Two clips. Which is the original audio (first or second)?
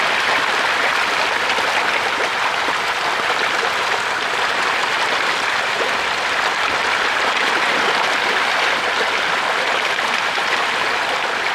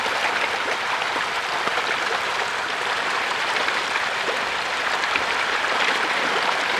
first